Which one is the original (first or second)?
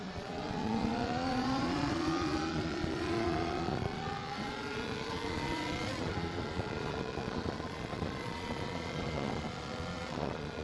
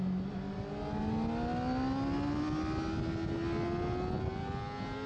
second